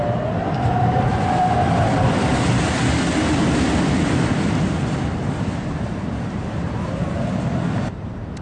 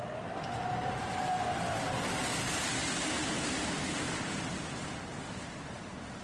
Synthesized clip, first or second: first